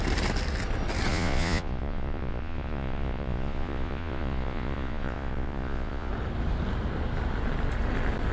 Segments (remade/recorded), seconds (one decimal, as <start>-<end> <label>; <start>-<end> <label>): 0.0-1.1 recorded; 1.1-6.1 remade; 6.1-8.3 recorded